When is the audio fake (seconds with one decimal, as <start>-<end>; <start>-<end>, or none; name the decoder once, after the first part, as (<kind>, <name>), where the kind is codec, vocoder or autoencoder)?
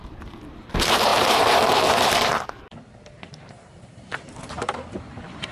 0.0-5.5 (vocoder, BigVGAN v2)